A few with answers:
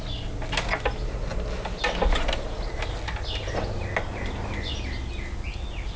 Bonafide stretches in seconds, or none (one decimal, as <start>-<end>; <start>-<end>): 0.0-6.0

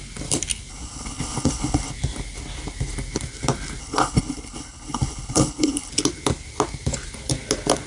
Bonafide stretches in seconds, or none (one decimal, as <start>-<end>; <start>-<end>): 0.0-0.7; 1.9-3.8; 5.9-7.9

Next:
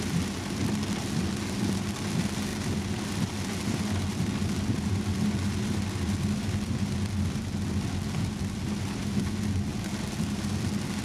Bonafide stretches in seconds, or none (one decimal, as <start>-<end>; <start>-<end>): 0.0-11.0

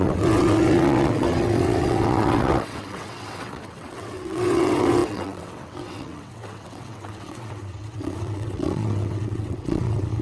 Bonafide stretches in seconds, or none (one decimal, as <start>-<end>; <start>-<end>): none

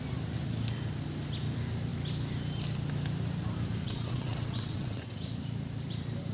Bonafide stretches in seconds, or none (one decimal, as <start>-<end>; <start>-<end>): 0.0-3.8; 5.1-6.3